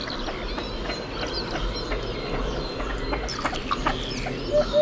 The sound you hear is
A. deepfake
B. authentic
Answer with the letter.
B